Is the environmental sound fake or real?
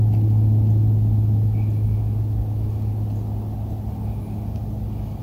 real